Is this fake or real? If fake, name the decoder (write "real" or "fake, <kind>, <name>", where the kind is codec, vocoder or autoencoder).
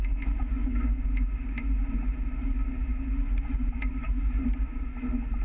real